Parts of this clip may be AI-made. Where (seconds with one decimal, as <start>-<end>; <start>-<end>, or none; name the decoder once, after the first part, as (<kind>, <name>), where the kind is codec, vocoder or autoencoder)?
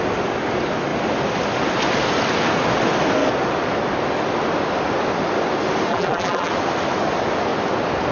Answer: 5.9-6.5 (vocoder, BigVGAN v2)